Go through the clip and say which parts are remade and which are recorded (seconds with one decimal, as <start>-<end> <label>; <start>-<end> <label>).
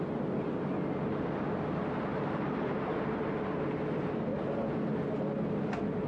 0.0-2.1 recorded; 2.1-3.6 remade; 3.6-4.3 recorded; 4.3-4.9 remade; 4.9-6.1 recorded